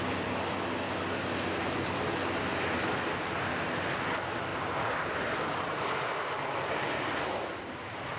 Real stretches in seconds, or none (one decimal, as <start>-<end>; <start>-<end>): 0.0-8.2